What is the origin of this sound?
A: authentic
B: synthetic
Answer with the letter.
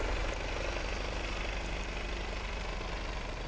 A